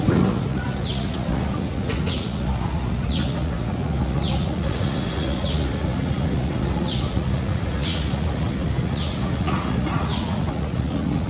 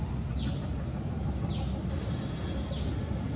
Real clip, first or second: second